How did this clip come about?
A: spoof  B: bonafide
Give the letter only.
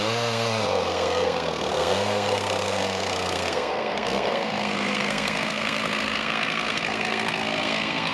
A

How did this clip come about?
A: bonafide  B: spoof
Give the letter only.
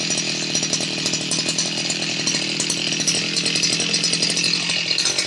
A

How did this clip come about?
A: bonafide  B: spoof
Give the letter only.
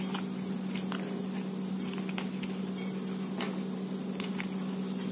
A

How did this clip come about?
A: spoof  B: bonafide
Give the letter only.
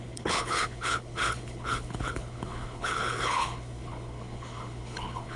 A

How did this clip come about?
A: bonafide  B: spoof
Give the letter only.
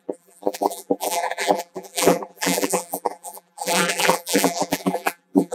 B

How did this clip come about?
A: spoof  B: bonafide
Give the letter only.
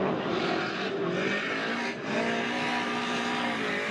B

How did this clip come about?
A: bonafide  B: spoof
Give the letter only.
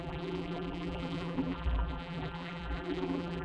B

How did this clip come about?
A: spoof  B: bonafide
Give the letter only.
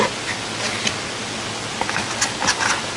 B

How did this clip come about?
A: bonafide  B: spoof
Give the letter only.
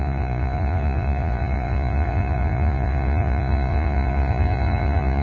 B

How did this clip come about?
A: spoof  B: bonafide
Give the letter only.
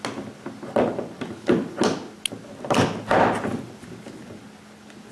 B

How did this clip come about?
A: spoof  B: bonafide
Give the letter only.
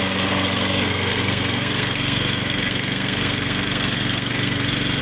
A